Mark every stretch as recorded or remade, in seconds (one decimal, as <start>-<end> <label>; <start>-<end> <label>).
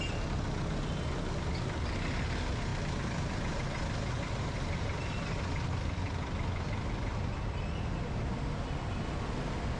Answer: 0.0-9.8 recorded